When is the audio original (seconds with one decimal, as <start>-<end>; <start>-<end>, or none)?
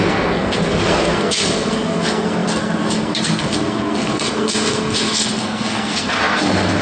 none